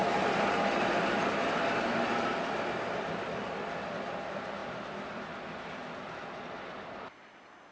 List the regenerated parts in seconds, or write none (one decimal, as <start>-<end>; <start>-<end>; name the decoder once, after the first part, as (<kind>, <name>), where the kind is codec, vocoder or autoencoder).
none